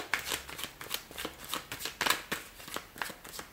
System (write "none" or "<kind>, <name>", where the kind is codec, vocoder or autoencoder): none